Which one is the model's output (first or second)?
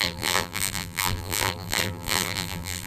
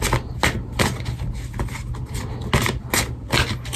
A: first